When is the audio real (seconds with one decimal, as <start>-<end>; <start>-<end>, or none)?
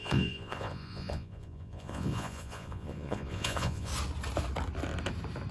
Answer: 3.9-5.5